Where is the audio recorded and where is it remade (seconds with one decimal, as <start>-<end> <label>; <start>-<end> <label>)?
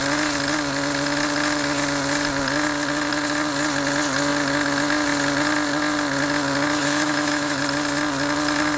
0.0-6.8 recorded; 6.8-7.6 remade; 7.6-8.8 recorded